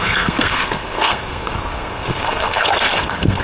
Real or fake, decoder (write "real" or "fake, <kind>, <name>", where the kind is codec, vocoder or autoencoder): fake, codec, SNAC